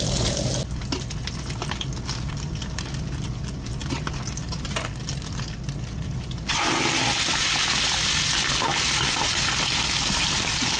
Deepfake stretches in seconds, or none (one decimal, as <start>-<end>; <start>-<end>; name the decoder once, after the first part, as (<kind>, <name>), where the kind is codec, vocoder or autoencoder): none